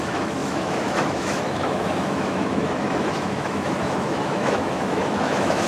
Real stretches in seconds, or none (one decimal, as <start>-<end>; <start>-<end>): none